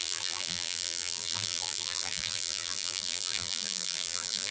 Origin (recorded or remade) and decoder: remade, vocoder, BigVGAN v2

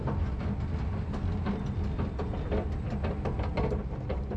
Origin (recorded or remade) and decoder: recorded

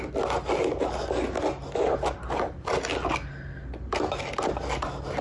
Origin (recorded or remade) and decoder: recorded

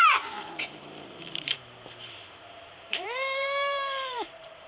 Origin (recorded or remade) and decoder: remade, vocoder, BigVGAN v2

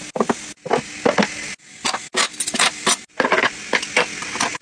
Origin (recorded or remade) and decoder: recorded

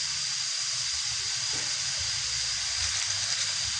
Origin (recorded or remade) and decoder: remade, vocoder, BigVGAN v2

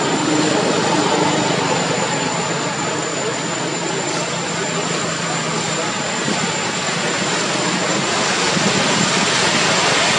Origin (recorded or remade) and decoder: recorded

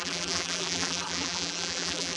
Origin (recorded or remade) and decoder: remade, vocoder, BigVGAN v2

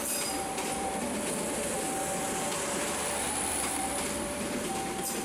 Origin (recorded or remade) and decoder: remade, vocoder, BigVGAN v2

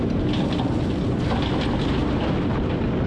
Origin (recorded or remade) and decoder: recorded